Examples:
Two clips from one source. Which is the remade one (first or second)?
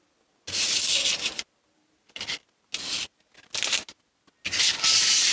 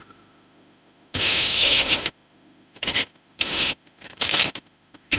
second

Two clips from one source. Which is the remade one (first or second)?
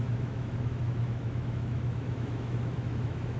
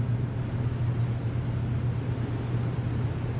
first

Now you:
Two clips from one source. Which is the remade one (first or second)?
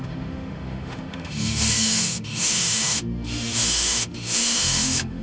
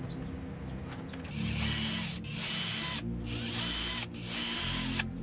first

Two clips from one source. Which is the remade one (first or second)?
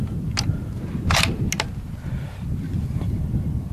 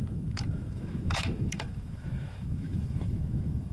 second